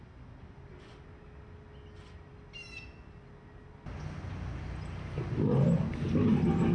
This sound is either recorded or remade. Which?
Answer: recorded